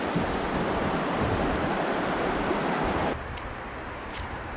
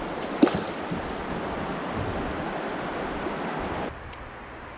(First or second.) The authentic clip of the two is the second